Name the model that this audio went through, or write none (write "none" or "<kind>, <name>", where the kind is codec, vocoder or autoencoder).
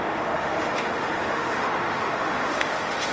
autoencoder, DAC-VAE